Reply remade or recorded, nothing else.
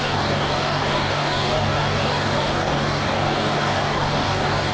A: remade